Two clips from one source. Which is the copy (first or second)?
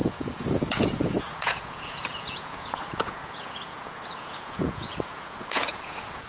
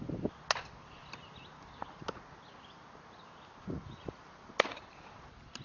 first